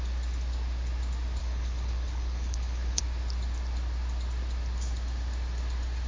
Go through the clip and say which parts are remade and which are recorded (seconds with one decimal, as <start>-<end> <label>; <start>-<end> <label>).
0.0-1.4 recorded; 1.4-3.0 remade; 3.0-6.1 recorded